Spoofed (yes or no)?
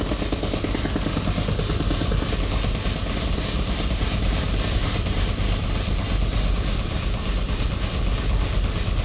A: no